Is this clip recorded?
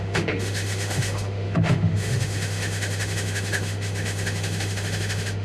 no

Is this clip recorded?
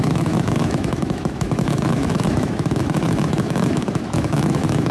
no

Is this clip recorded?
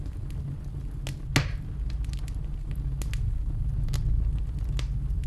yes